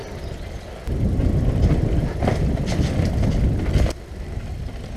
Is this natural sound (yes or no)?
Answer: yes